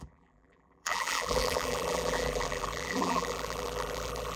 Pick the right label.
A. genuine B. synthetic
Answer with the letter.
B